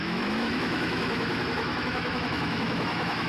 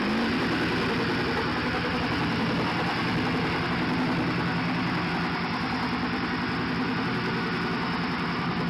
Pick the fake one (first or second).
first